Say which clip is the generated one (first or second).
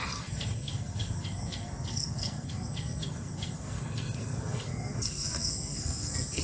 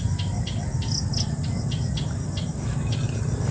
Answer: first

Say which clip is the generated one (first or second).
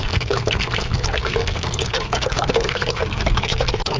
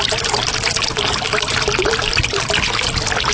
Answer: first